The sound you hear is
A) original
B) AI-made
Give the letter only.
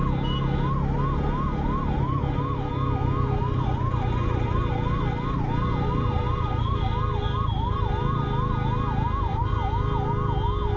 A